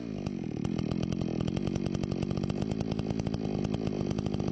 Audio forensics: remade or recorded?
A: recorded